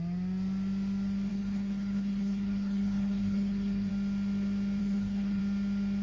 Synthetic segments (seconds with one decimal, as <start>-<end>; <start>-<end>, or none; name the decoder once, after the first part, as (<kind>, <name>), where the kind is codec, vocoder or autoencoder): 1.3-3.9 (codec, HILCodec); 4.8-5.4